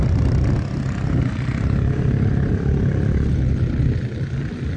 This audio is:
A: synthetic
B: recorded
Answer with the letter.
B